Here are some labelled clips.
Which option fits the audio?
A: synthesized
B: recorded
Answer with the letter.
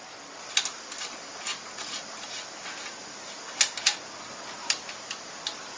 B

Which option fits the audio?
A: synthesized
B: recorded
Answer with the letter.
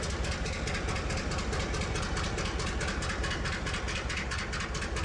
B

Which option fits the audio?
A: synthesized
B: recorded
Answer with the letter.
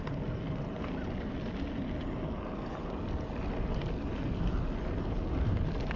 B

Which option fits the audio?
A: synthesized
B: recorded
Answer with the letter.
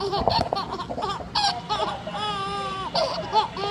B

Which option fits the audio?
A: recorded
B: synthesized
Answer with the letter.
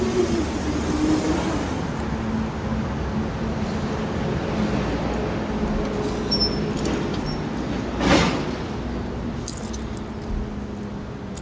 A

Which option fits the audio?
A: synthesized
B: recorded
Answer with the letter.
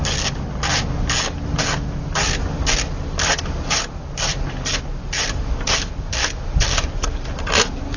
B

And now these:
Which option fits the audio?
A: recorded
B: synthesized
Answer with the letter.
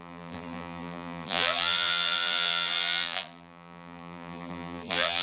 B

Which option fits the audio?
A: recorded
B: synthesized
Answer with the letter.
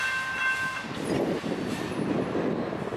A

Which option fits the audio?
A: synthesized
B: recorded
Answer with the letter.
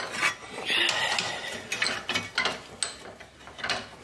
B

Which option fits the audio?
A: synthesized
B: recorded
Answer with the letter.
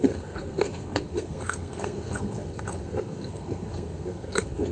A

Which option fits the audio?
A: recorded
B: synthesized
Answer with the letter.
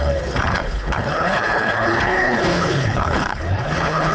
B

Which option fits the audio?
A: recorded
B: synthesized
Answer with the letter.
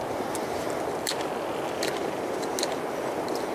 A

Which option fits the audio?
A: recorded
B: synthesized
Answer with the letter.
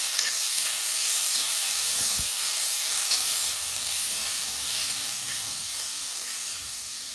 B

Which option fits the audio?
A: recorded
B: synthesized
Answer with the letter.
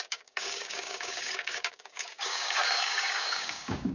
B